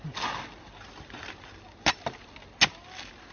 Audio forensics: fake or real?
real